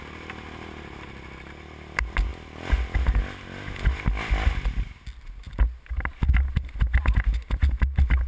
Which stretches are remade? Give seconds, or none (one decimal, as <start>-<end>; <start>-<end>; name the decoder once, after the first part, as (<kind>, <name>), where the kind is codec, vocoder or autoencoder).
none